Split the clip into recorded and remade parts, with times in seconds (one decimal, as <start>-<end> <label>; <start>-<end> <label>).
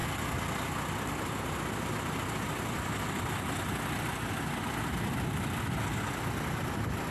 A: 0.0-7.1 recorded